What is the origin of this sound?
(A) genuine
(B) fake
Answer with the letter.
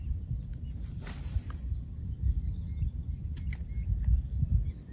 A